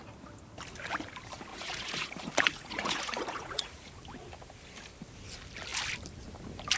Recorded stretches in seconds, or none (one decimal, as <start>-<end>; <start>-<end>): 0.0-1.5; 3.9-6.8

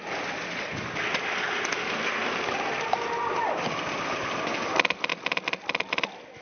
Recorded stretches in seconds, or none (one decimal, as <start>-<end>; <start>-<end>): 0.0-5.1

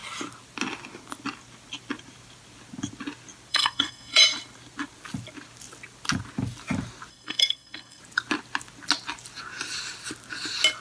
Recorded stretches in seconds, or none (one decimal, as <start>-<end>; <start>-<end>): 0.0-3.5; 4.2-7.1; 8.0-10.8

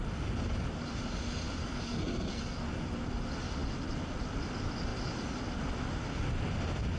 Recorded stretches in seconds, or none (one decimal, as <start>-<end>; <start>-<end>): 0.0-1.6; 2.7-7.0

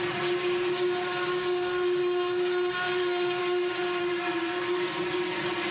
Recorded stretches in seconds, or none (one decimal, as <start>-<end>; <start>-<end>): 3.4-4.0

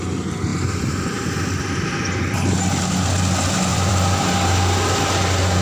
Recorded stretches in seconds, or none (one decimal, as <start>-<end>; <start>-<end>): 0.0-0.5; 2.0-3.7; 4.2-5.6

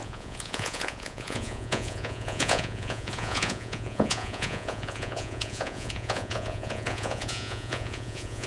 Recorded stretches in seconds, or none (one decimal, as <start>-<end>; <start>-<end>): none